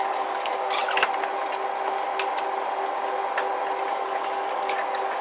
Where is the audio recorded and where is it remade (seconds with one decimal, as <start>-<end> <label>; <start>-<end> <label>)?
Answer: 0.0-0.8 remade; 0.8-3.9 recorded; 3.9-5.2 remade

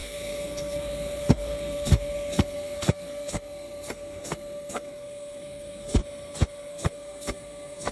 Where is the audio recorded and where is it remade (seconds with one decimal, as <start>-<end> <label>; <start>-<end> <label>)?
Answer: 0.0-6.0 remade; 6.0-6.7 recorded; 6.7-7.9 remade

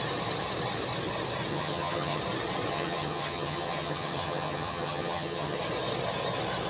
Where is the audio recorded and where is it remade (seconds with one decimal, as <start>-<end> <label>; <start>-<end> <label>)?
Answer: 0.0-1.5 recorded; 1.5-2.2 remade; 2.2-2.7 recorded; 2.7-5.6 remade; 5.6-6.7 recorded

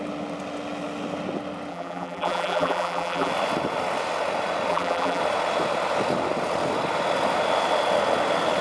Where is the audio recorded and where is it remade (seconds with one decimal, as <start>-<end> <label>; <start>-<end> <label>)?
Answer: 0.0-1.7 recorded; 1.7-3.3 remade; 3.3-4.7 recorded; 4.7-5.2 remade; 5.2-8.6 recorded

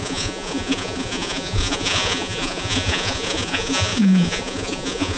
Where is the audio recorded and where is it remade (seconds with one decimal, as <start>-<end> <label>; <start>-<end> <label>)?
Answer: 0.0-5.2 remade

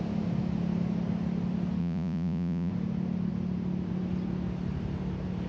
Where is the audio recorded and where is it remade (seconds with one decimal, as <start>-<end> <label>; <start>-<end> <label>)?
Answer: 0.0-1.8 recorded; 1.8-2.7 remade; 2.7-5.5 recorded

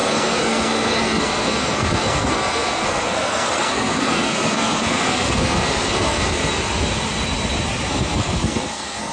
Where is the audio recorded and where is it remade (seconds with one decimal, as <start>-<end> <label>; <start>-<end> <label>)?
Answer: 0.0-6.4 remade; 6.4-7.9 recorded; 7.9-9.1 remade

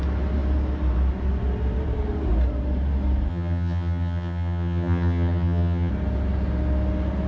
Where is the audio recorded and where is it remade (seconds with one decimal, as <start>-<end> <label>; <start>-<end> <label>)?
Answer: 0.0-3.3 recorded; 3.3-5.9 remade; 5.9-7.3 recorded